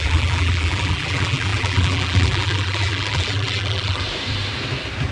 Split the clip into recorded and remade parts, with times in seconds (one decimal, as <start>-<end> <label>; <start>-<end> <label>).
0.0-4.0 remade; 4.0-5.1 recorded